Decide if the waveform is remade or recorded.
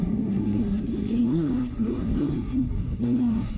remade